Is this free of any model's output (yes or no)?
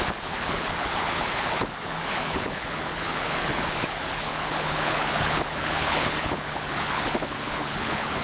no